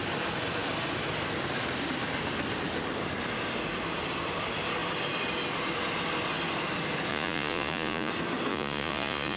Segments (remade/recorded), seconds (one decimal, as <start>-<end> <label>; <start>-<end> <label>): 0.0-7.1 recorded; 7.1-8.1 remade; 8.1-8.5 recorded; 8.5-9.4 remade